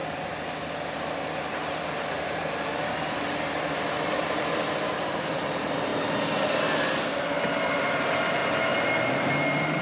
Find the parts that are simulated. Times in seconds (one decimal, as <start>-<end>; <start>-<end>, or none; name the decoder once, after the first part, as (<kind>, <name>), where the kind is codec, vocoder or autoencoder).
1.8-5.9 (vocoder, BigVGAN v2); 7.9-9.8